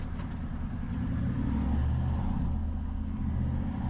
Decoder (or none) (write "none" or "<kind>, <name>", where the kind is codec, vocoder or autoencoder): none